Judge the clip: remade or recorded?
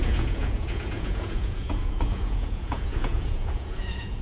remade